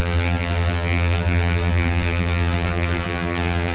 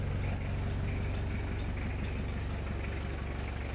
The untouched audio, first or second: second